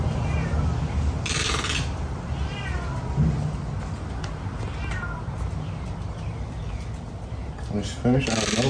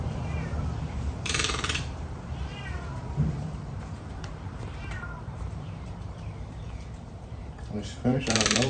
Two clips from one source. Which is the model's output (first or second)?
second